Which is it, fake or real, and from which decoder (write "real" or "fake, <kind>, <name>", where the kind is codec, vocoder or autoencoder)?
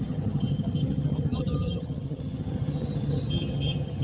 fake, vocoder, HiFi-GAN